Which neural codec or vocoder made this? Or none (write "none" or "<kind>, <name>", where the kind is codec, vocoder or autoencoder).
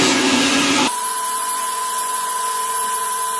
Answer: vocoder, Vocos